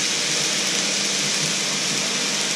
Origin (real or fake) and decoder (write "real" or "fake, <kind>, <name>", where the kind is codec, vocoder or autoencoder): real